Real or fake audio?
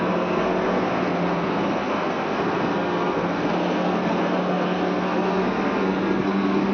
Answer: fake